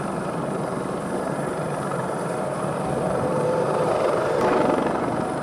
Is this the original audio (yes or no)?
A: no